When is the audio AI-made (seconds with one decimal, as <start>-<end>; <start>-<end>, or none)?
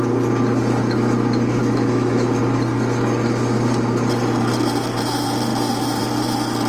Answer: 1.6-2.4